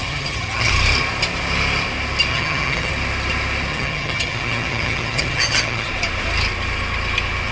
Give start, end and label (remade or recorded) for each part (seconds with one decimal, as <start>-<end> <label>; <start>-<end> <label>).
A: 0.0-0.7 remade; 0.7-2.3 recorded; 2.3-2.9 remade; 2.9-3.7 recorded; 3.7-5.9 remade; 5.9-7.5 recorded